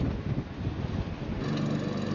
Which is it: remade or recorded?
recorded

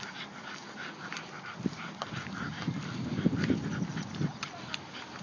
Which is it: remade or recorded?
recorded